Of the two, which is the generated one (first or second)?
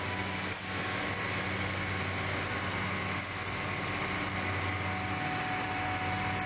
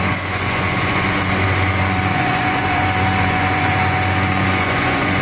second